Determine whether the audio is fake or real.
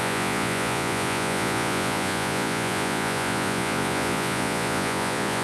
fake